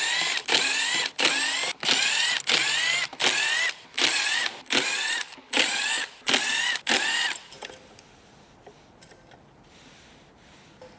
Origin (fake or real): real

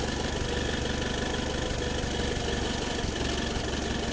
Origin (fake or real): real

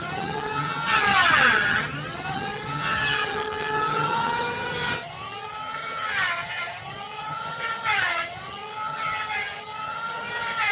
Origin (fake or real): fake